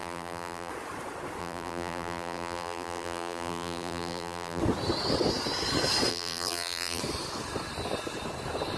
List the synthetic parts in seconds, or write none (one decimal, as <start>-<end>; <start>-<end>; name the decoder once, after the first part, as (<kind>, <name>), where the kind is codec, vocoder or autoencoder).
0.0-0.7 (vocoder, BigVGAN v2); 1.4-4.6; 6.1-7.0